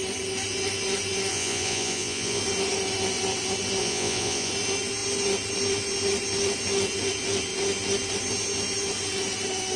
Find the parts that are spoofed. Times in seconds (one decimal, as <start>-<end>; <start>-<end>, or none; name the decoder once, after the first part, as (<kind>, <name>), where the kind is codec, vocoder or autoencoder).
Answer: 1.3-2.4 (vocoder, Vocos); 3.8-4.5

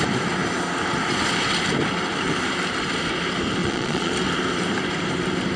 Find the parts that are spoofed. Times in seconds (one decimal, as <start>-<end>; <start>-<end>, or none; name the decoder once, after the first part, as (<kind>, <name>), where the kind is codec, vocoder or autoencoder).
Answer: 3.6-4.1 (vocoder, Vocos)

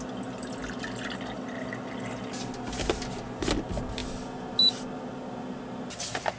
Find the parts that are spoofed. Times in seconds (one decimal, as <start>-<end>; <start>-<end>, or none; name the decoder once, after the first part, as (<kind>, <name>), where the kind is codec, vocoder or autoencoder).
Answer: none

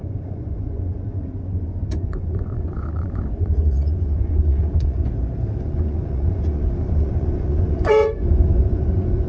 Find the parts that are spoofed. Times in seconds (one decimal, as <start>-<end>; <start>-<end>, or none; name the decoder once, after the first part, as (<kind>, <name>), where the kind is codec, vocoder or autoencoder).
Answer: 0.0-5.0 (vocoder, Vocos); 5.6-9.3